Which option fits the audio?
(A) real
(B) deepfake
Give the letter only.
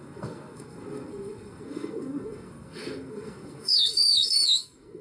B